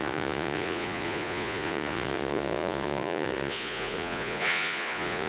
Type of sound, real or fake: fake